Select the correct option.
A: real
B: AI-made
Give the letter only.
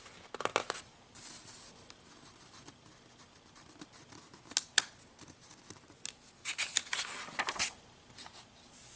A